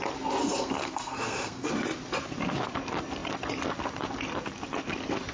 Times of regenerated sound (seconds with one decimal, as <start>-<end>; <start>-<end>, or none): 0.4-1.7